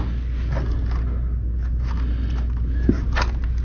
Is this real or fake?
real